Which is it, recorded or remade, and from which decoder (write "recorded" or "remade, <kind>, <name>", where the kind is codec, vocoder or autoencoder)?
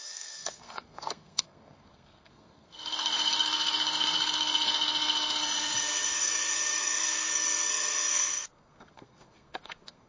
remade, codec, SNAC